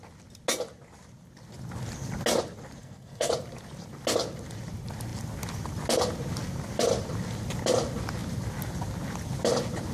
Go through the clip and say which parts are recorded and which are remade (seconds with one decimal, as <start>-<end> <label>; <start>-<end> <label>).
0.0-2.8 recorded; 2.8-3.3 remade; 3.3-9.9 recorded